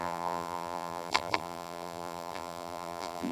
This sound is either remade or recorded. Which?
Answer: remade